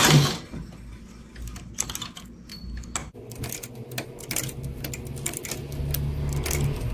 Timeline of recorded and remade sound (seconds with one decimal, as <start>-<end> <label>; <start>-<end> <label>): 0.0-6.9 recorded